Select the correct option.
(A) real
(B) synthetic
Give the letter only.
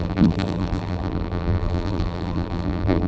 B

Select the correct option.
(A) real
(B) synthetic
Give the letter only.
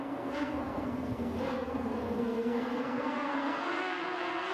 B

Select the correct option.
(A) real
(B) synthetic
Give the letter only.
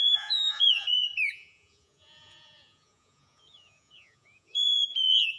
B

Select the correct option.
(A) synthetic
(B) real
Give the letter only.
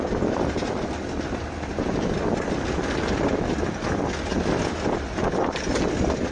B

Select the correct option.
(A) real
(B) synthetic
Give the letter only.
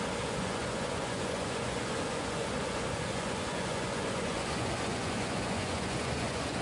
B